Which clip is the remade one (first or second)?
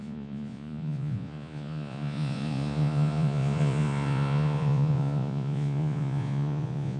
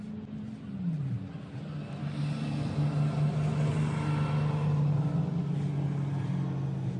first